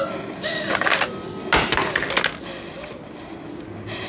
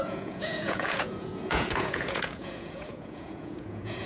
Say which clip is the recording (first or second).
first